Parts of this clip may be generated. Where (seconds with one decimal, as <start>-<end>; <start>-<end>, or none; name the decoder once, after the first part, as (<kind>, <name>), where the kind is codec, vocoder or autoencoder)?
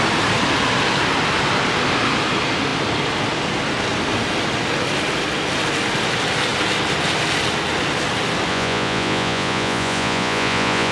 8.5-10.9 (vocoder, Vocos)